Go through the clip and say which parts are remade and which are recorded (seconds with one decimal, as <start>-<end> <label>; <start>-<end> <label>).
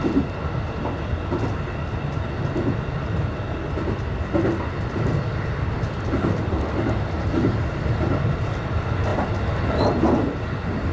0.0-10.9 recorded